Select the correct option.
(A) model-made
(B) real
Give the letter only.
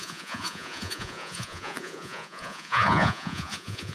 A